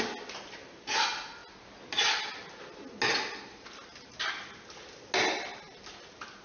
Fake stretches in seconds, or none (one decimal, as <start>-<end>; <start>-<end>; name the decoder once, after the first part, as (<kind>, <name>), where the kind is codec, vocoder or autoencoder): none